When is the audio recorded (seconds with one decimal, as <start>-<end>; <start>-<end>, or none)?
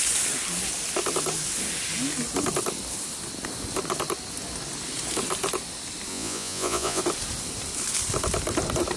0.0-6.1; 7.0-9.0